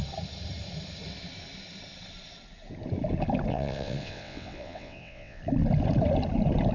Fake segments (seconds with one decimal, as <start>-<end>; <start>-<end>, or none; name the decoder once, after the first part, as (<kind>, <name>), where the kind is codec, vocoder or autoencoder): 3.5-5.4 (vocoder, WaveNeXt)